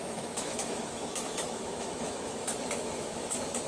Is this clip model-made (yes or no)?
yes